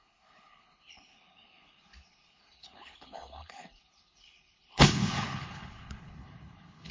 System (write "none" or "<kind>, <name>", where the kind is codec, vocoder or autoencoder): codec, HILCodec